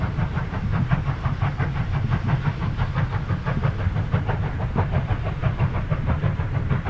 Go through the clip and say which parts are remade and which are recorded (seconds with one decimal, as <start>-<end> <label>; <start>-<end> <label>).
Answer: 0.0-0.7 remade; 0.7-4.2 recorded; 4.2-6.9 remade